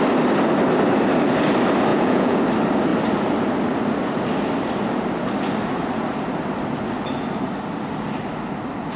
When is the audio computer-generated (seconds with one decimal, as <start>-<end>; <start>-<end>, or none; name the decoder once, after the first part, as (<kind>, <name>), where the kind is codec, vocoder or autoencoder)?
1.9-2.4 (vocoder, Vocos)